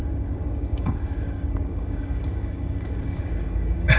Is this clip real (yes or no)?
no